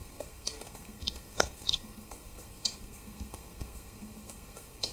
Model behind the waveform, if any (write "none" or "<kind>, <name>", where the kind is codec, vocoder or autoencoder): codec, SNAC